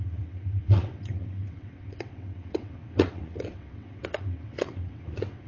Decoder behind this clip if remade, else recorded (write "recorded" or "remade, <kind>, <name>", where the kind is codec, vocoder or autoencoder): remade, vocoder, WaveNeXt